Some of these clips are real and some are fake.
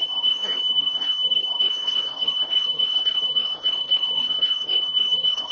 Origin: fake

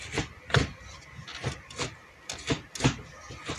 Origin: real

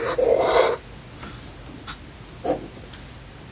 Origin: real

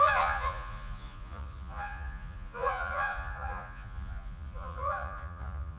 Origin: fake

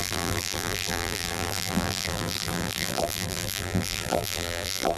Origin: fake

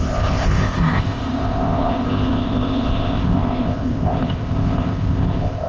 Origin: fake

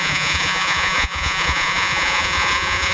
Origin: fake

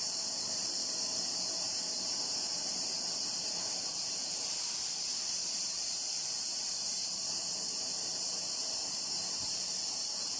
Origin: fake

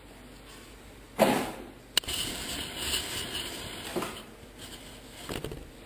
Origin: real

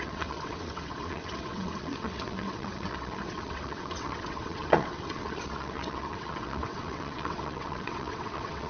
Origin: fake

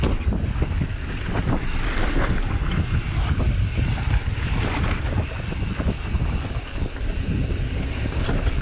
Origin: real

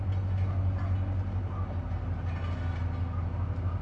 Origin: real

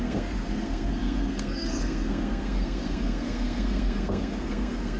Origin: fake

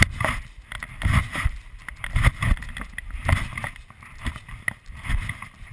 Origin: real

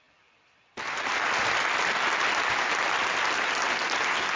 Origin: real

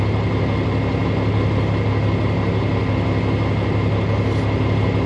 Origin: real